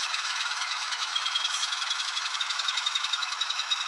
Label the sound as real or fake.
fake